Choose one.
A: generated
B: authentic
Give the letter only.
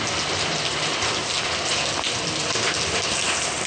B